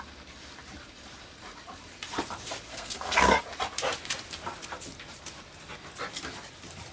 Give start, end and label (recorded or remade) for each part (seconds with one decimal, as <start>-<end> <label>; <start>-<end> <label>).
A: 0.0-2.7 recorded; 2.7-3.4 remade; 3.4-6.9 recorded